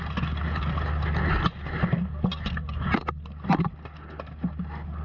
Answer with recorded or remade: recorded